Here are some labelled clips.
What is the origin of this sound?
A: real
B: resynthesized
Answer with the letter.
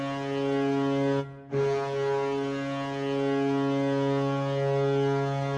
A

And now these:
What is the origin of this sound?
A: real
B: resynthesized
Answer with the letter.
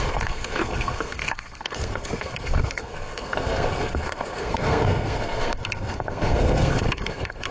B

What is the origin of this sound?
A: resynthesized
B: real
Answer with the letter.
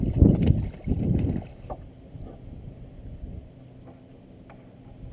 B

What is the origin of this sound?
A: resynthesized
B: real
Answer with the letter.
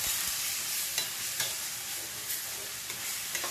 B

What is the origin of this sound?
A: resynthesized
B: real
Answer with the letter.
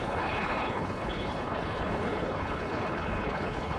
A